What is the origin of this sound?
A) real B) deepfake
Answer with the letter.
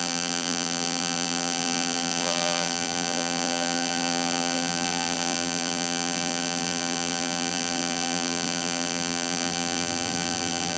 B